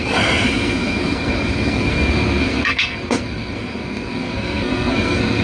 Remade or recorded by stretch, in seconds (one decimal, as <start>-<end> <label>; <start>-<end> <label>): 0.0-5.4 remade